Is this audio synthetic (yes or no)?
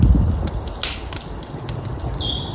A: no